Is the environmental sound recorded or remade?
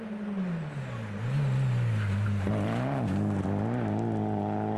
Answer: recorded